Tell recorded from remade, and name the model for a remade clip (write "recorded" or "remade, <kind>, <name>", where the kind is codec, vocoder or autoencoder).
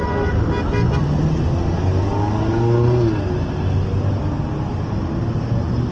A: recorded